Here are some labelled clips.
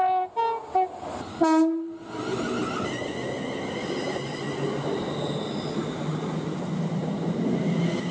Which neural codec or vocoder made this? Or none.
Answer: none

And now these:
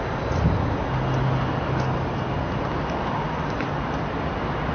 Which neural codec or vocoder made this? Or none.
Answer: none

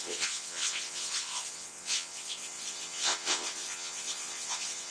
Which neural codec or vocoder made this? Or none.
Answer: vocoder, WaveNeXt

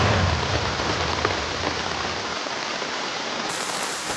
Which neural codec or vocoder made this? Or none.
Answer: none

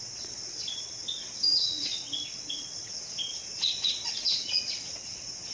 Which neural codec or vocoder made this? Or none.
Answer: vocoder, WaveNeXt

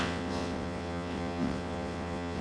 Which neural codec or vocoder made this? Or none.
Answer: vocoder, WaveNeXt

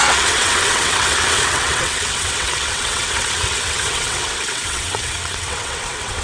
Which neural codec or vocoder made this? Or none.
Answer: vocoder, WaveNeXt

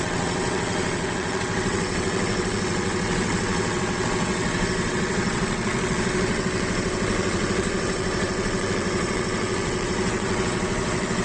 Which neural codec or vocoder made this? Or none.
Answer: vocoder, WaveNeXt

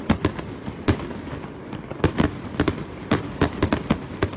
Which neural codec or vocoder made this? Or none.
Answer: none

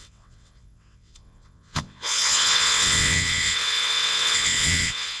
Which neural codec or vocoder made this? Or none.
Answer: vocoder, WaveNeXt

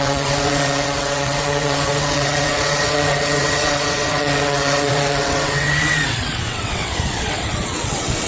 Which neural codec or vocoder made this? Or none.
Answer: vocoder, WaveNeXt